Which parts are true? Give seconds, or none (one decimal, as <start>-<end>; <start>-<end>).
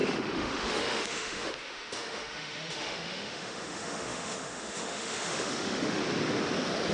6.0-6.9